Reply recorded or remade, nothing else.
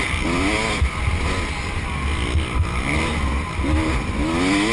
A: recorded